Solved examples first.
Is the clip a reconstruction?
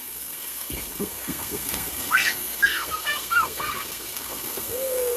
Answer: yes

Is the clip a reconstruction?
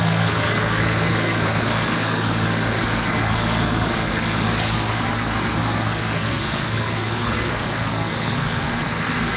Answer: yes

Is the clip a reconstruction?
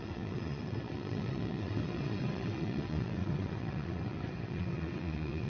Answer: yes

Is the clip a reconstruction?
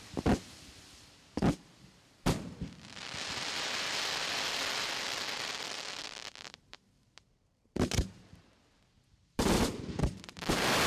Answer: yes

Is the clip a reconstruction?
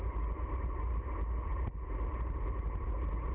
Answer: no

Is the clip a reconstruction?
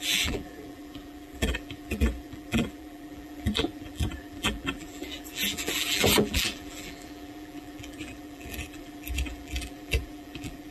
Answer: yes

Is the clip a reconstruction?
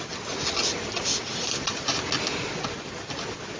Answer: no